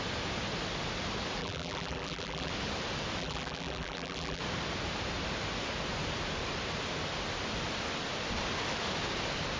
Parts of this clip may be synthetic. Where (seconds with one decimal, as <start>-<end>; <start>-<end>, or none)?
1.4-2.5; 3.2-4.4